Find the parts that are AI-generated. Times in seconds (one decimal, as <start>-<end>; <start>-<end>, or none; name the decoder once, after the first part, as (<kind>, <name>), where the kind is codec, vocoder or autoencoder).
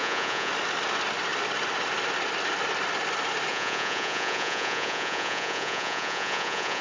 0.0-0.5 (vocoder, Vocos); 3.5-6.8